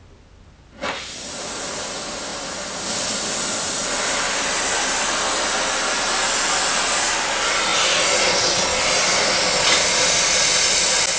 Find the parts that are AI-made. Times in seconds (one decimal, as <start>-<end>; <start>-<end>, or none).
none